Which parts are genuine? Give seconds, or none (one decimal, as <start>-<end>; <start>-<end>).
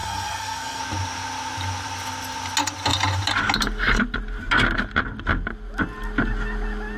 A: 0.8-7.0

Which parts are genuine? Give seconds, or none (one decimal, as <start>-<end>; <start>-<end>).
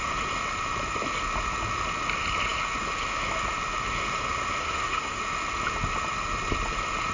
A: 0.0-4.6; 5.2-7.1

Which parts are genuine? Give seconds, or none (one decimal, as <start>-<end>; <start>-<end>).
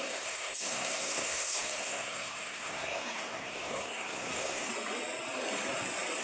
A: 4.7-6.2